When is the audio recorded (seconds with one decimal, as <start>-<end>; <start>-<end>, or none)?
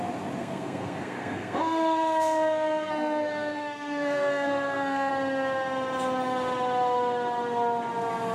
0.0-0.4; 5.1-8.3